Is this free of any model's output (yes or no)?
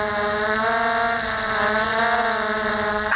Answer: yes